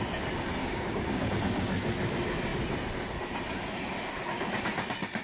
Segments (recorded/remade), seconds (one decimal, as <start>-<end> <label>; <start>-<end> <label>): 0.0-0.6 recorded; 0.6-1.3 remade; 1.3-5.2 recorded